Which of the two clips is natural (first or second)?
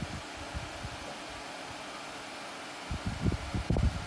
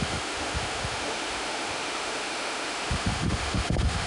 first